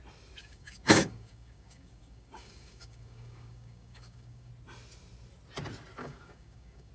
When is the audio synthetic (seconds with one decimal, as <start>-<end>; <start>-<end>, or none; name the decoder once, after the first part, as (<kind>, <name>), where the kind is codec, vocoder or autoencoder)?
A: 0.4-4.5 (codec, DAC); 6.0-6.9